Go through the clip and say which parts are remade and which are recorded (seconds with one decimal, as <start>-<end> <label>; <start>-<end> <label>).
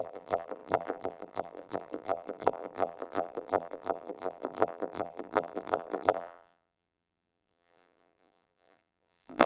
0.0-9.5 remade